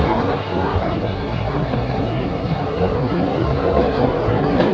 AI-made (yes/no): yes